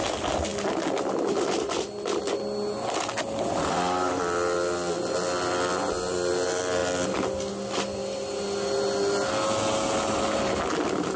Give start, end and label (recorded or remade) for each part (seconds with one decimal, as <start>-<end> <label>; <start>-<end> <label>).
0.0-11.2 recorded